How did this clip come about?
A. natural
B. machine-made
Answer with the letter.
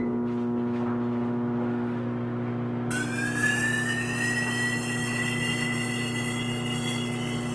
A